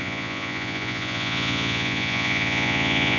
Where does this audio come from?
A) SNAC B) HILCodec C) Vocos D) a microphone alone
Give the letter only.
C